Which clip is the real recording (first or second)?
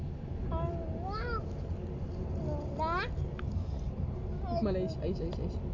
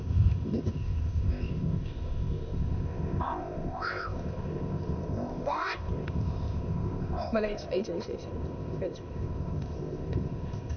first